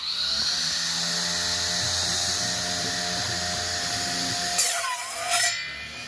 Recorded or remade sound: recorded